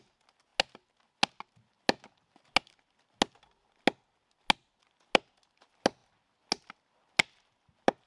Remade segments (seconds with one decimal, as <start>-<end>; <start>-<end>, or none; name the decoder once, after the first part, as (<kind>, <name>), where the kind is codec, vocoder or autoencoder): none